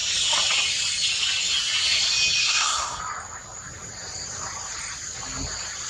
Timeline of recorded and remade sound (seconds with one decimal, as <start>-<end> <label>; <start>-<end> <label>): 0.0-2.4 recorded; 2.4-3.0 remade; 3.0-5.9 recorded